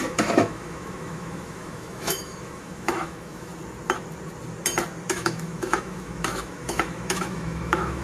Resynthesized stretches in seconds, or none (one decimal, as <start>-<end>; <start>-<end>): 0.0-3.5; 5.1-8.0